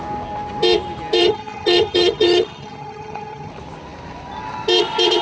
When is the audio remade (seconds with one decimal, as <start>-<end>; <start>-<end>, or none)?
1.2-3.5